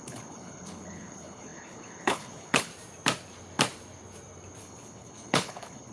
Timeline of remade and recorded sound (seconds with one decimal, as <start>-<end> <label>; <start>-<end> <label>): 0.0-2.7 remade; 2.7-4.6 recorded; 4.6-5.9 remade